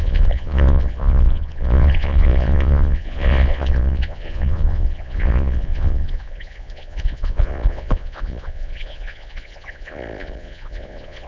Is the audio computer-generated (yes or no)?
yes